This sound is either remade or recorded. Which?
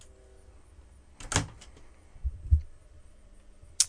recorded